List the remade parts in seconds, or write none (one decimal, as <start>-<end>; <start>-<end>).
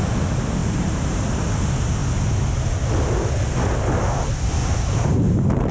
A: 0.6-1.6; 4.6-5.7